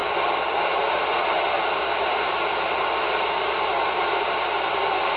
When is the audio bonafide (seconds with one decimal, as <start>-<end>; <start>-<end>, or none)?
0.0-5.2